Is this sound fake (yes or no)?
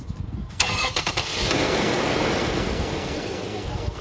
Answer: yes